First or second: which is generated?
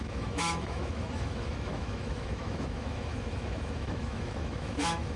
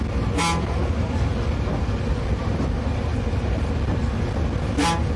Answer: first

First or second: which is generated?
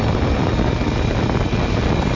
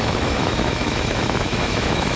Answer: second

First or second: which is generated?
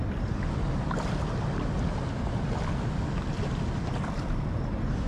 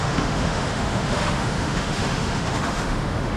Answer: second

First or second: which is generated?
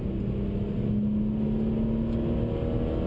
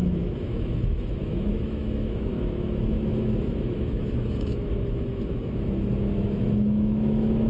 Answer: second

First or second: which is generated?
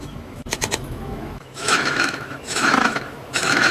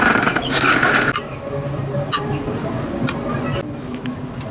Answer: first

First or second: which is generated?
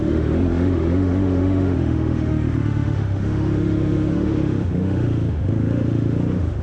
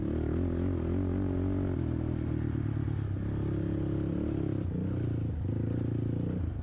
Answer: first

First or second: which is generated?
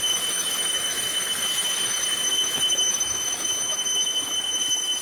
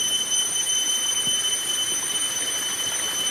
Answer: first